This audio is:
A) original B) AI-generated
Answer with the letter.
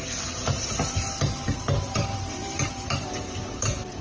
B